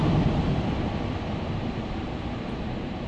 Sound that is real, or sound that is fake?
real